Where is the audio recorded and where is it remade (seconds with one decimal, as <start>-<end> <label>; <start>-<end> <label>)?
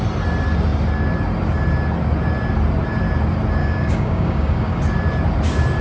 0.0-3.6 recorded; 3.6-4.8 remade; 4.8-5.8 recorded